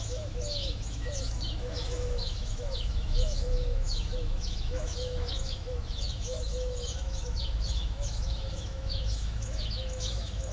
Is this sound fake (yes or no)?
yes